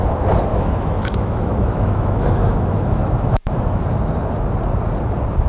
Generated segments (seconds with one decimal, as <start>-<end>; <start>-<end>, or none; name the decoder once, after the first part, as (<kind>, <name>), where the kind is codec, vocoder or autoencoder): 0.5-3.8 (autoencoder, DAC-VAE)